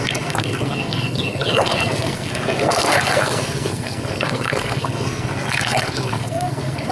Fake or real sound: fake